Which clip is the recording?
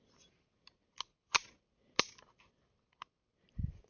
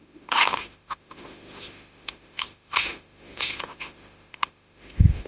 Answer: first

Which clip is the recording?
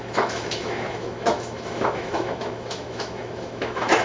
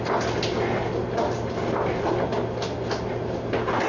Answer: second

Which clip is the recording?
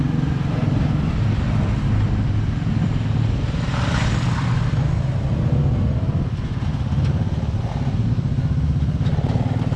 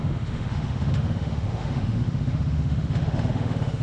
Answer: first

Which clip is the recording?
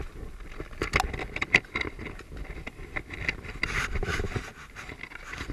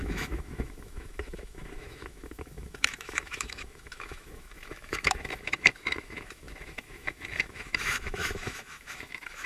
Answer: first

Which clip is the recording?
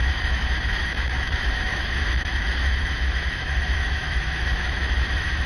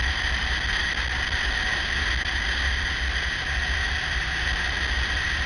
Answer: second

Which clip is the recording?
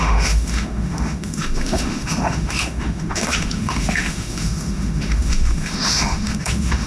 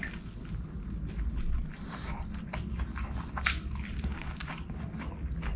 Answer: second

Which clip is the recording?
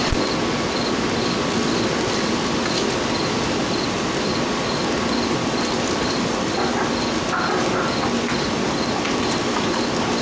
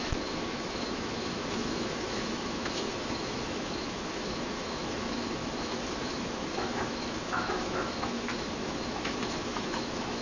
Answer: first